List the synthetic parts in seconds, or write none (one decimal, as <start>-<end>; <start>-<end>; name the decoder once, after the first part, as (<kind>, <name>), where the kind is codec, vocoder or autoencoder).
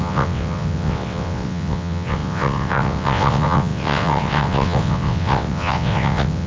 0.0-6.5 (vocoder, WaveNeXt)